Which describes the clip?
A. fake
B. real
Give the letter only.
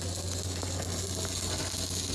B